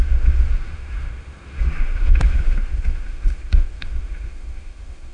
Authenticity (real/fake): fake